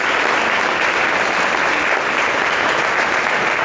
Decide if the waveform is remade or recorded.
recorded